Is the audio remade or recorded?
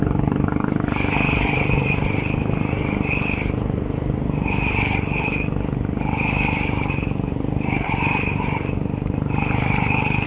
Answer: recorded